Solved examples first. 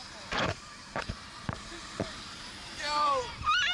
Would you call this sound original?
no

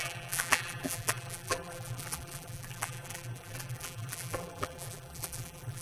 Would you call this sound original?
no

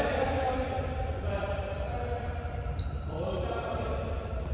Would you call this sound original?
no